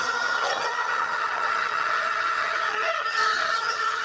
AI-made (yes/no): yes